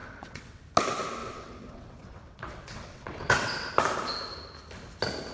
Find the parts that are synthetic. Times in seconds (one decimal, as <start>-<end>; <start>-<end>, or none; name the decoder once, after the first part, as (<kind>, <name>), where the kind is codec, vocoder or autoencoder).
0.0-0.6 (vocoder, WaveNeXt); 1.2-3.7